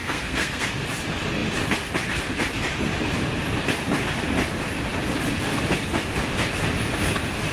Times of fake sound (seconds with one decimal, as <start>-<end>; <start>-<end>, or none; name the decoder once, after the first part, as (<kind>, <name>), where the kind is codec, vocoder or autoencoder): 0.0-0.7 (codec, SNAC)